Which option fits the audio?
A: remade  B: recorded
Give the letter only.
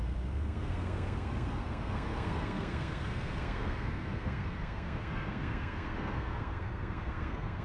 A